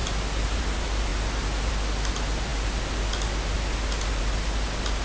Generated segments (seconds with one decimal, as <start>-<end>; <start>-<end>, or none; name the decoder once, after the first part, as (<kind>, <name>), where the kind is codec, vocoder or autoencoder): none